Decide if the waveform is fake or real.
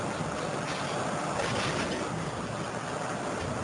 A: real